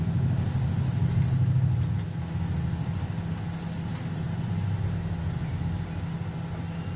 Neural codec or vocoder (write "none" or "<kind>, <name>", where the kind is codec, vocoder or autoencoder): none